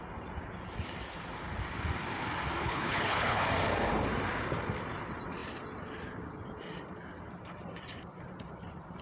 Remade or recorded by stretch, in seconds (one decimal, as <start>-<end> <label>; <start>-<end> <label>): 0.0-2.6 recorded; 2.6-3.5 remade; 3.5-9.0 recorded